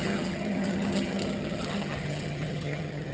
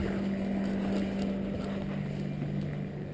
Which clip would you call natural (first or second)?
second